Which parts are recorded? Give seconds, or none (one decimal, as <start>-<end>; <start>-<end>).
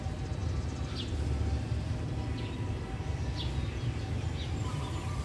0.0-5.2